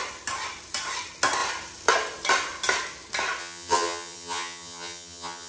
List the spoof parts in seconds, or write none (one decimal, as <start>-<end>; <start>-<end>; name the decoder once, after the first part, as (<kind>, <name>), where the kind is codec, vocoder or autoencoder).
3.4-5.5 (vocoder, HiFi-GAN)